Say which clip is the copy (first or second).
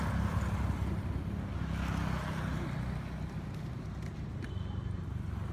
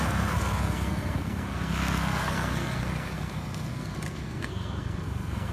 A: second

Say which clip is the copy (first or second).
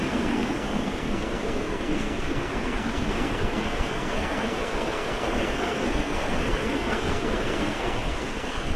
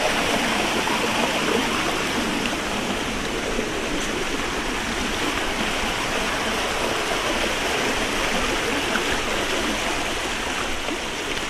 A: first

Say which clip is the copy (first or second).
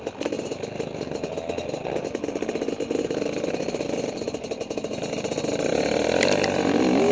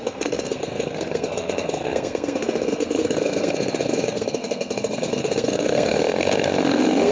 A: second